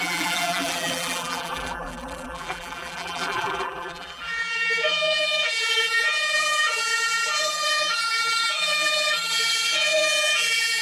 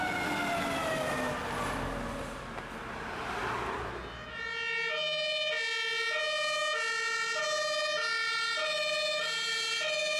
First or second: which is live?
second